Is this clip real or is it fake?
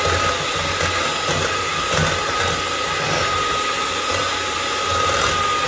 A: real